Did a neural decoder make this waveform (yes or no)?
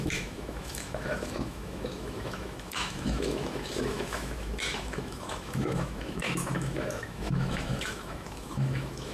yes